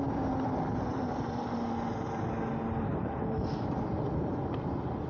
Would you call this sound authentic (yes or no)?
yes